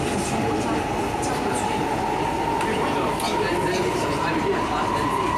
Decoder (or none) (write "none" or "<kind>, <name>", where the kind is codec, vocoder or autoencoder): none